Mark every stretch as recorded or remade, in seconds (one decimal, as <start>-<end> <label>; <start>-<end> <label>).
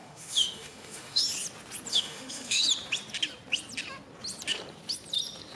0.0-1.2 remade; 1.2-1.9 recorded; 1.9-2.6 remade; 2.6-5.6 recorded